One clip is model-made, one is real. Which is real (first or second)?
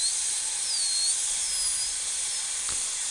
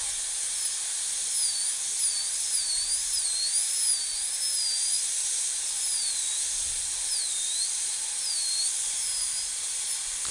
first